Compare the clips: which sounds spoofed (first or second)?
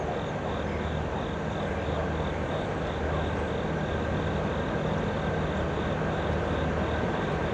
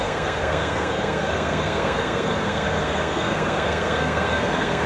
second